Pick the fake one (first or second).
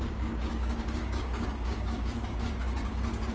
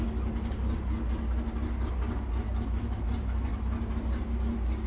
first